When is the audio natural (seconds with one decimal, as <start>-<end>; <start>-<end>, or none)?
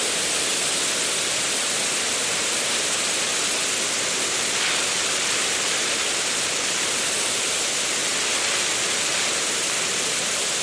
0.6-2.1; 3.3-6.7; 8.0-9.0